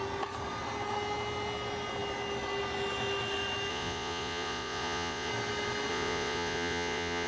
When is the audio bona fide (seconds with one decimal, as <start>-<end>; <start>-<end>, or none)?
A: 0.0-3.7; 5.3-5.9